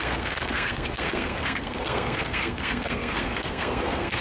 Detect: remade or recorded remade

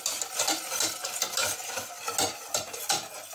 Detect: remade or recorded recorded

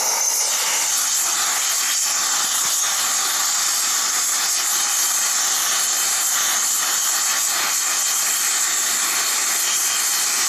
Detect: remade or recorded recorded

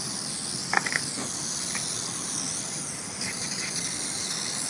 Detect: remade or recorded recorded